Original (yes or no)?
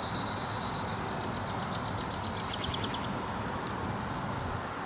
yes